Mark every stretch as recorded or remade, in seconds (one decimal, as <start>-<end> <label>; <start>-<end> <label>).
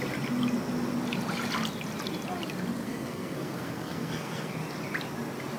0.0-2.8 recorded; 2.8-4.5 remade; 4.5-5.6 recorded